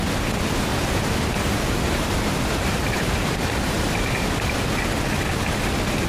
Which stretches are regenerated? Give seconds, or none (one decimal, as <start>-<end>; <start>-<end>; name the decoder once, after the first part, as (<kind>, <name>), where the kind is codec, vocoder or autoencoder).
0.7-4.4 (vocoder, BigVGAN v2)